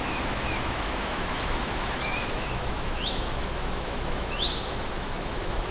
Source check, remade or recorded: remade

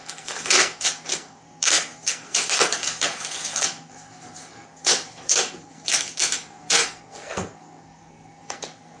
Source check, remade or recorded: remade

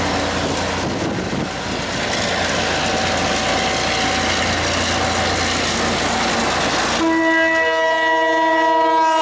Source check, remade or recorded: recorded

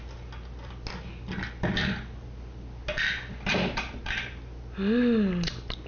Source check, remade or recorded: recorded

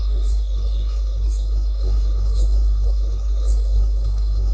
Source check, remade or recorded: remade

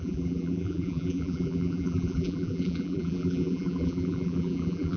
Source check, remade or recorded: remade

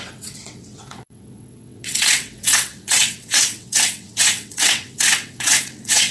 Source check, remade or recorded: remade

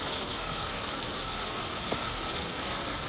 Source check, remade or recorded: remade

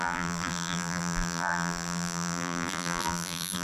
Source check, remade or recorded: remade